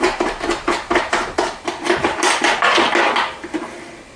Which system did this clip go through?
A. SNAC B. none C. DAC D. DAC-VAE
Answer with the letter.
B